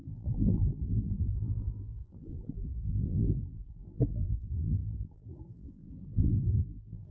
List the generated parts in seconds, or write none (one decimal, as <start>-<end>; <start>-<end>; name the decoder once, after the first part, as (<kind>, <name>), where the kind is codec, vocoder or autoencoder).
0.0-7.1 (vocoder, BigVGAN v2)